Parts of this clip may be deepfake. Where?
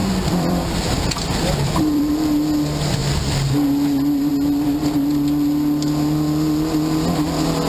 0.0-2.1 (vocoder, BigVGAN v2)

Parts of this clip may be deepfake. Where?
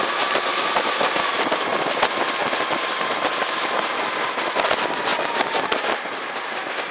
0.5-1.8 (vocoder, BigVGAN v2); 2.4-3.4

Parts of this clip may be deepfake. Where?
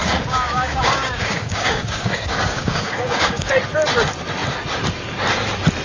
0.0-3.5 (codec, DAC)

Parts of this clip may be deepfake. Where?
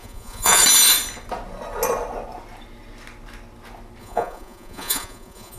0.0-0.6 (vocoder, Vocos); 4.0-5.6